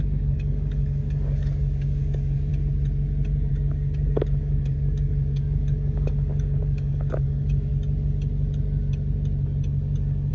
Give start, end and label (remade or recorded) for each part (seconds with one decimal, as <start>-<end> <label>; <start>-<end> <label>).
0.0-2.5 remade; 2.5-3.5 recorded; 3.5-7.7 remade; 7.7-10.3 recorded